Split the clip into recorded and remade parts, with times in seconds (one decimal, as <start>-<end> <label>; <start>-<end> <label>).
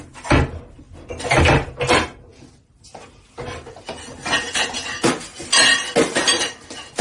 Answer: 0.0-7.0 recorded